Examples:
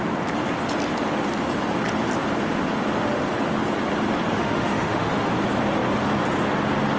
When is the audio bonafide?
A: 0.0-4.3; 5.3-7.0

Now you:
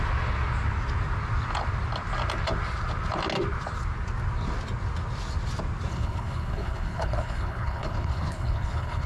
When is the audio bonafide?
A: 0.0-5.9

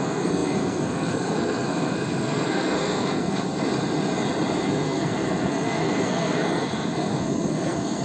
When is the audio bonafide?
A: 3.5-4.5

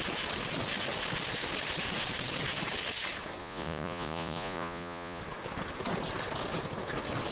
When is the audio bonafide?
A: 0.0-3.4; 5.2-7.3